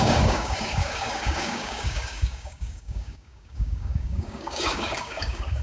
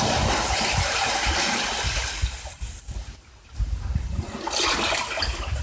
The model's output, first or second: first